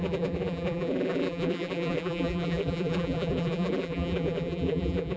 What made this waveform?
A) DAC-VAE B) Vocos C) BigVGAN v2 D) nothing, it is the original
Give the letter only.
C